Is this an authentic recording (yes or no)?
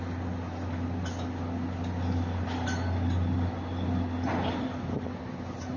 yes